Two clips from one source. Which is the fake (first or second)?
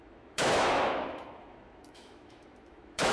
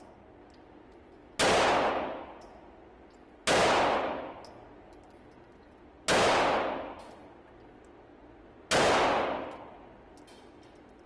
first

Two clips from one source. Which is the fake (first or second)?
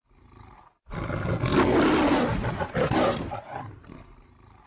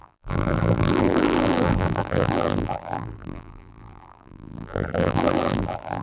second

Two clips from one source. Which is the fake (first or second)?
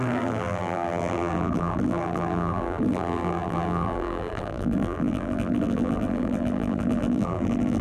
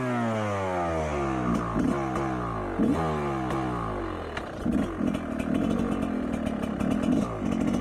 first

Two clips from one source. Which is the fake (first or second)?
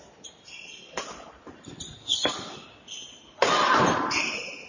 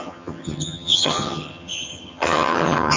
second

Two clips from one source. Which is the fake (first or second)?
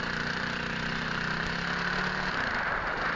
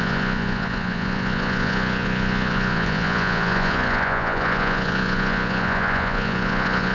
second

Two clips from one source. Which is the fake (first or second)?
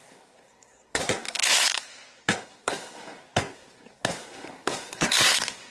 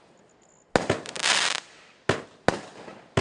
first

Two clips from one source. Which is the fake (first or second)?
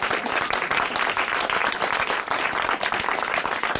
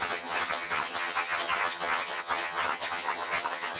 second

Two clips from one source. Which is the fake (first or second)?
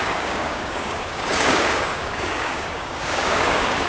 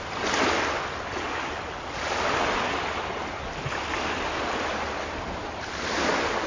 first